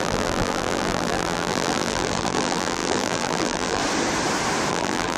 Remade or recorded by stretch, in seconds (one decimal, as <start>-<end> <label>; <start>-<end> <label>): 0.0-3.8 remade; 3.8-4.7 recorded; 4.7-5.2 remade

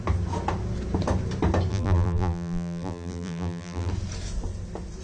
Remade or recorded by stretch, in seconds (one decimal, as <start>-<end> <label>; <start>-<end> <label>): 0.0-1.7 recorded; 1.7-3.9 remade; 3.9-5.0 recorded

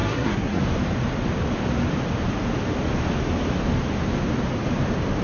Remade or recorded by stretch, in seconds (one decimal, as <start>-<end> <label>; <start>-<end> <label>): 0.0-0.6 remade; 0.6-5.2 recorded